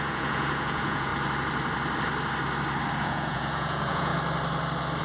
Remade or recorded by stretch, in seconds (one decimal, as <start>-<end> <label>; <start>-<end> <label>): 0.0-1.1 remade; 1.1-3.0 recorded; 3.0-4.1 remade; 4.1-5.0 recorded